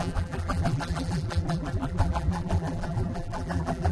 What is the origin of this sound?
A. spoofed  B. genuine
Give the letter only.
A